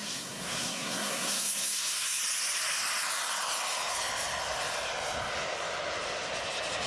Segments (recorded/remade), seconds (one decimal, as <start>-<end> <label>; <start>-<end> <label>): 0.0-2.2 remade; 2.2-6.9 recorded